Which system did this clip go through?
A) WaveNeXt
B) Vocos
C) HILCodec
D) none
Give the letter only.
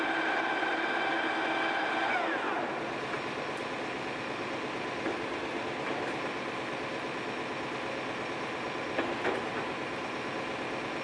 D